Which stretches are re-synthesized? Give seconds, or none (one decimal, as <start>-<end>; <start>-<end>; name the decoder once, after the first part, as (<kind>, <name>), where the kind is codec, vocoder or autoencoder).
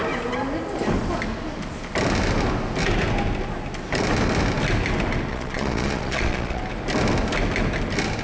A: 5.3-6.6 (vocoder, Vocos)